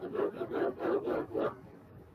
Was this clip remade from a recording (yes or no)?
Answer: yes